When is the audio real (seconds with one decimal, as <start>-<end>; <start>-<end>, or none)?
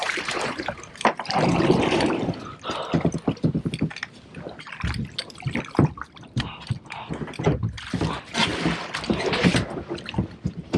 2.3-10.8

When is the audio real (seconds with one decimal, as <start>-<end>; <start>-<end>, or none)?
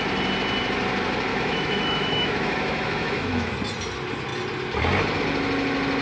0.0-1.3; 3.5-6.0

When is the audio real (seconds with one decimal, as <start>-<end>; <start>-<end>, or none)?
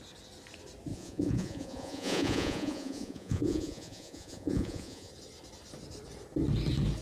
0.0-0.9; 5.1-7.0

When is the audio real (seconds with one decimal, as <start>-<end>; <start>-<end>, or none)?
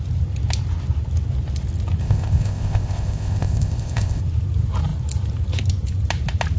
0.0-2.0; 4.2-6.6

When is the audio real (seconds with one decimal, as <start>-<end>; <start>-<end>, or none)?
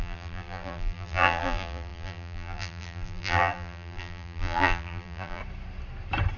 5.4-6.4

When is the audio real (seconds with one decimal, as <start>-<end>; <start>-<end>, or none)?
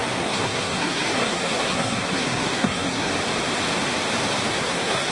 3.1-4.5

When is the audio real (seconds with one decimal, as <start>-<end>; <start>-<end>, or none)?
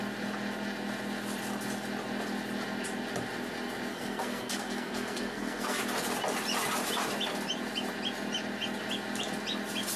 0.0-3.9; 5.8-10.0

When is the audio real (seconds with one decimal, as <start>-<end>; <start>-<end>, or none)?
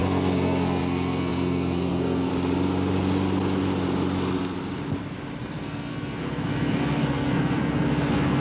2.3-5.4